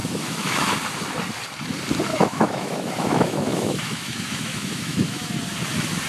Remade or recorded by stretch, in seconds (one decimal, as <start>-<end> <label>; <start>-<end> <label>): 0.0-0.7 remade; 0.7-2.1 recorded; 2.1-5.3 remade; 5.3-6.1 recorded